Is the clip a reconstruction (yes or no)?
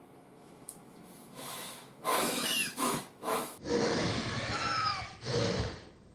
yes